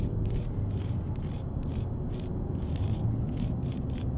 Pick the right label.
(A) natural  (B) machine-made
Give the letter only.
A